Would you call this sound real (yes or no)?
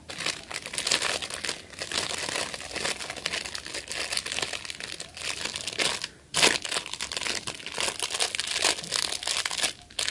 yes